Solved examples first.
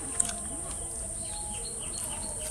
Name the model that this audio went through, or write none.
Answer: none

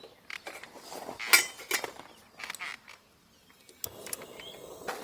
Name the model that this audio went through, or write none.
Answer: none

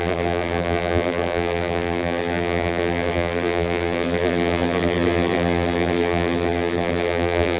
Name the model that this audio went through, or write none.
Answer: vocoder, BigVGAN v2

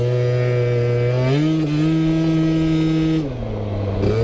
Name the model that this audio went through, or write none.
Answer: none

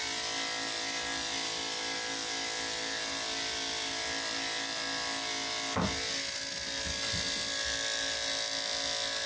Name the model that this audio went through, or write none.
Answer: none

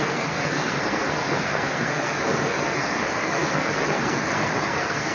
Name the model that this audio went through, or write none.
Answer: codec, SNAC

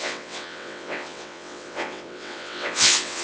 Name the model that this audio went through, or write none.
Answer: vocoder, WaveNeXt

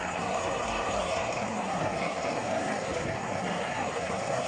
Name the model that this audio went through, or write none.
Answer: codec, SNAC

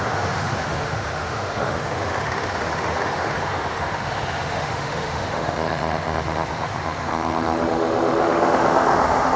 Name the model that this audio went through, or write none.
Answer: autoencoder, DAC-VAE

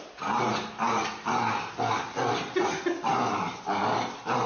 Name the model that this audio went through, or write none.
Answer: none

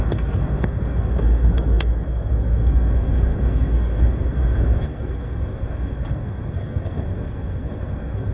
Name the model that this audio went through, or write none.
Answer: codec, SNAC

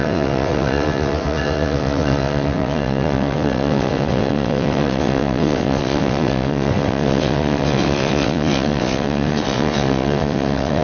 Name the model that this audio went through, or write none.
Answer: vocoder, WaveNeXt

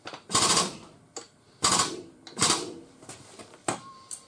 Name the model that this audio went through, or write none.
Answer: vocoder, BigVGAN v2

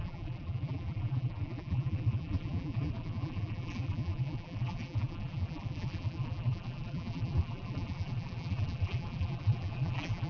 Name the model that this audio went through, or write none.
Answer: vocoder, BigVGAN v2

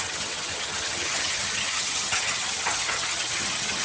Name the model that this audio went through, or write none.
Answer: vocoder, HiFi-GAN